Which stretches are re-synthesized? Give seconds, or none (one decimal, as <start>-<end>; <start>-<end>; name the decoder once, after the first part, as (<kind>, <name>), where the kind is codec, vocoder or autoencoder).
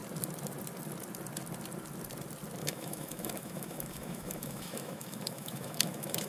2.6-6.3 (autoencoder, DAC-VAE)